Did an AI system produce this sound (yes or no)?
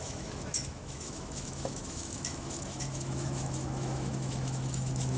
yes